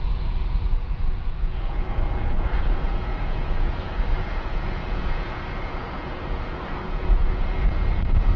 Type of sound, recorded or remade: remade